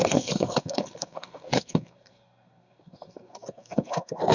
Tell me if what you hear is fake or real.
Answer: fake